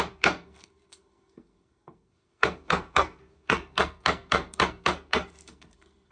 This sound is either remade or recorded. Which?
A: remade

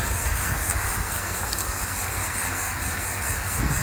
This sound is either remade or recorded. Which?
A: remade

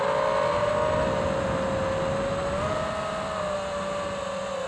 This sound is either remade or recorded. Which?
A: recorded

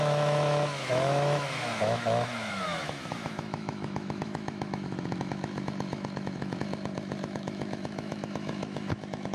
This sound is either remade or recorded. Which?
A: remade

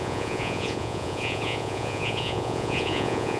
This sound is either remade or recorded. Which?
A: remade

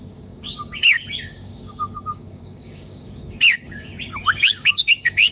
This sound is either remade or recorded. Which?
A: remade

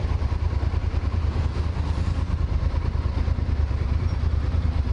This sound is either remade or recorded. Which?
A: remade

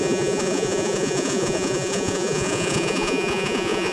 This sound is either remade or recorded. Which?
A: remade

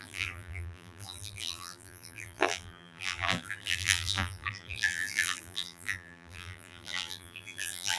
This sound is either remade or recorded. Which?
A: remade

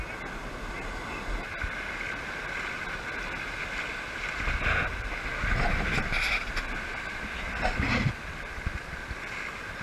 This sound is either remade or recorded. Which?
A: recorded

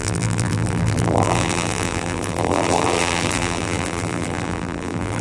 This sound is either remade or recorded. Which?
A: remade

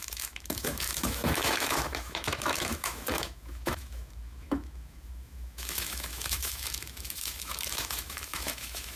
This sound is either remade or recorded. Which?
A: remade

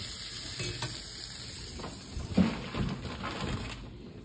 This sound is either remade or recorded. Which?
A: recorded